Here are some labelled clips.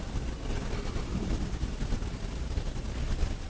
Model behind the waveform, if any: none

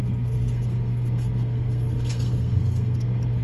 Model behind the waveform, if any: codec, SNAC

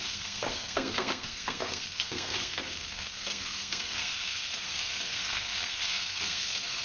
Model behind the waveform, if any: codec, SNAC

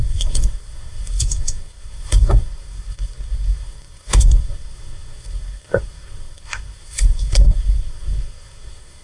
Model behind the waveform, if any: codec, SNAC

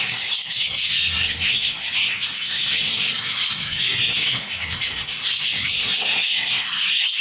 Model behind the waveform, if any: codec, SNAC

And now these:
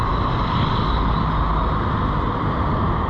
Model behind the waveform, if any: none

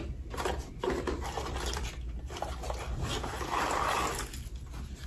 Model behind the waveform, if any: none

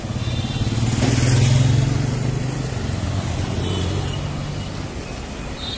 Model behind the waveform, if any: none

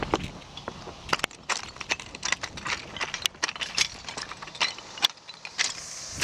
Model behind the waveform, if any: none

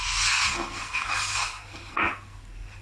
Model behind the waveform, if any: codec, SNAC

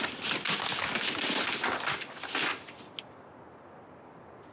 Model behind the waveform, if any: none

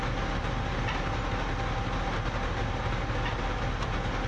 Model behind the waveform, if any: none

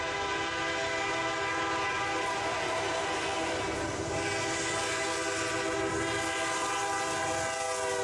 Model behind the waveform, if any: none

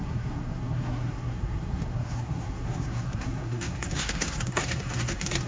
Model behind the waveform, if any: codec, SNAC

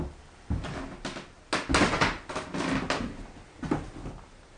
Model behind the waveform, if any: none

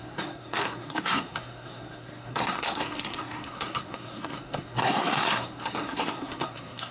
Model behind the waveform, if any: codec, SNAC